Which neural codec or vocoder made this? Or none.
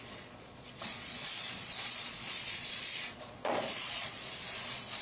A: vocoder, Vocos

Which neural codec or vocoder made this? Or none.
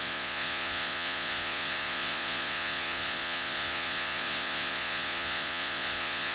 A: vocoder, Vocos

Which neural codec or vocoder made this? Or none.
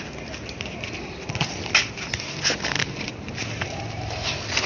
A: none